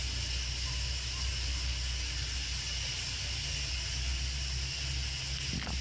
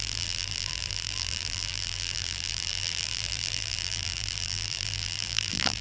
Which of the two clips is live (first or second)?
first